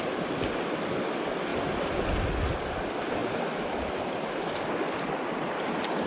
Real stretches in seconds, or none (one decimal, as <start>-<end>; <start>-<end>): 0.0-6.1